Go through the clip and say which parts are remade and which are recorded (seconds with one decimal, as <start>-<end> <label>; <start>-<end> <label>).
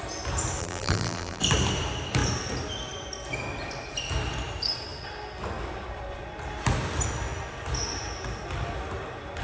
0.0-0.6 recorded; 0.6-1.4 remade; 1.4-9.4 recorded